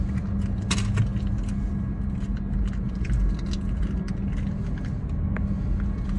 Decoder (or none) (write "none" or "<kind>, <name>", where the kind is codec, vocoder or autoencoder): none